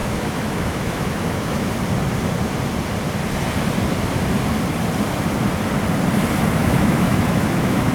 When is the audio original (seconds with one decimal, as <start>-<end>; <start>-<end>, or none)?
1.7-6.6